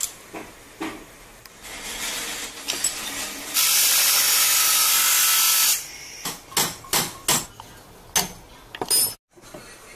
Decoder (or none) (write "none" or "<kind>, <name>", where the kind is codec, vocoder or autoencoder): none